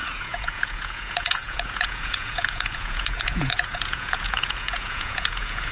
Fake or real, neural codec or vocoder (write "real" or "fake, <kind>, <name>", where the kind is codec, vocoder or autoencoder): fake, vocoder, Vocos